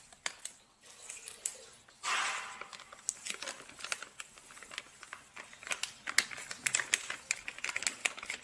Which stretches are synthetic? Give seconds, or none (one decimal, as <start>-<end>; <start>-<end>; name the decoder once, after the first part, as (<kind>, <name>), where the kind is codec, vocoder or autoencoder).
none